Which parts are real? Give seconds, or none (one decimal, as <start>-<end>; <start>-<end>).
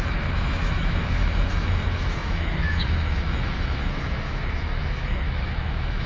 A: none